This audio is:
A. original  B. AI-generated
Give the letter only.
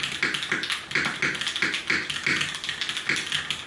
A